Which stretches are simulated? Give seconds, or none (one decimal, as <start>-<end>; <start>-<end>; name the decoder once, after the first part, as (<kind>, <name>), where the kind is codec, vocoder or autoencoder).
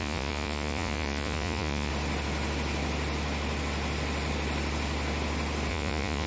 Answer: 0.0-1.9 (vocoder, Vocos); 5.7-6.3